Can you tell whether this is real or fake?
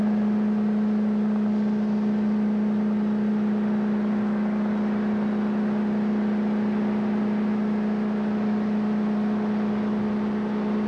real